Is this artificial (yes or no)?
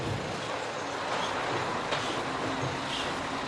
no